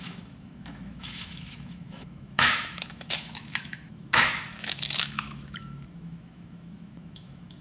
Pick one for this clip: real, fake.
fake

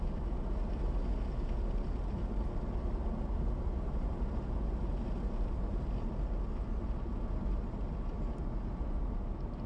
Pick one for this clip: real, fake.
real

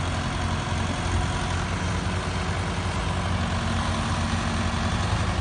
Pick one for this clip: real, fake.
real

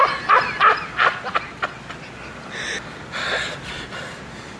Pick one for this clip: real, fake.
real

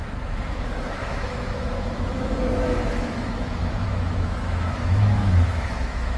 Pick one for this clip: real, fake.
fake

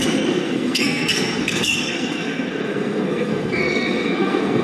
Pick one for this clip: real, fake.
fake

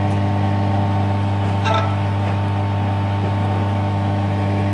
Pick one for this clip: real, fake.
real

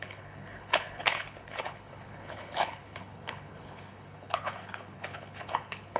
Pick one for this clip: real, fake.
fake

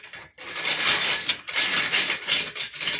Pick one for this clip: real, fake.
real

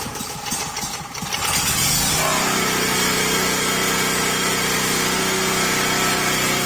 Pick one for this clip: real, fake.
real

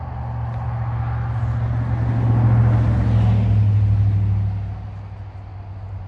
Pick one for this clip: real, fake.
real